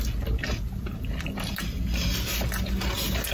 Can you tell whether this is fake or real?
real